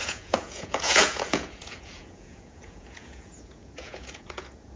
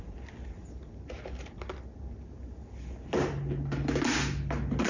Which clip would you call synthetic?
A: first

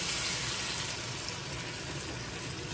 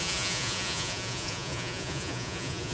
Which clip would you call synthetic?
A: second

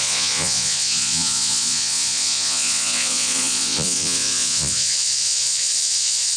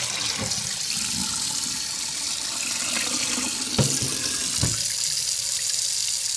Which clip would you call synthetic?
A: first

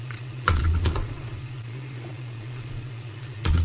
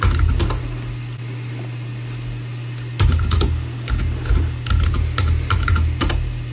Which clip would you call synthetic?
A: first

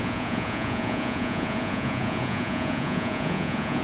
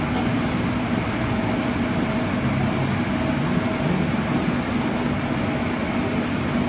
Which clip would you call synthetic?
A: first